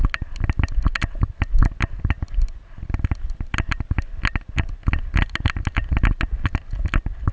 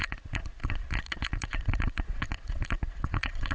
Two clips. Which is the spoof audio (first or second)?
second